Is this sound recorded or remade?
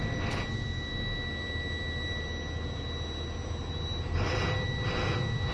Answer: recorded